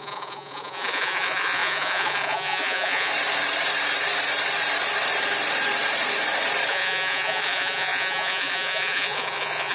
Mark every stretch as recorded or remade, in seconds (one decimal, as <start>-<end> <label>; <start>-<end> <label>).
0.0-3.1 remade; 3.1-6.7 recorded; 6.7-9.7 remade